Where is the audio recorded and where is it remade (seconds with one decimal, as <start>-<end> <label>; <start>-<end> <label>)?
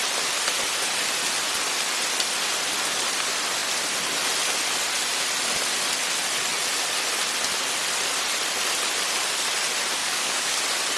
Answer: 0.0-10.0 recorded; 10.0-10.6 remade; 10.6-11.0 recorded